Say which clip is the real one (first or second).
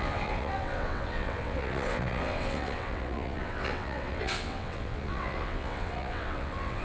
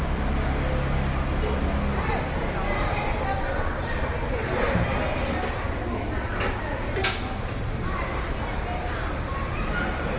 second